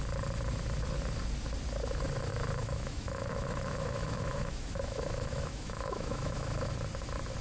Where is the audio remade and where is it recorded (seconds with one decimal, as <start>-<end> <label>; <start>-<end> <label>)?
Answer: 0.0-2.3 recorded; 2.3-6.7 remade; 6.7-7.4 recorded